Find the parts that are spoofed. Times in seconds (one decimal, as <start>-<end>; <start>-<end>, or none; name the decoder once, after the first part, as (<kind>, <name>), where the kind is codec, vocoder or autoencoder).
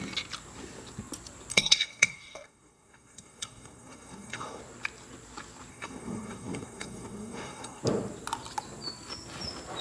1.5-4.6 (codec, SNAC); 5.7-7.8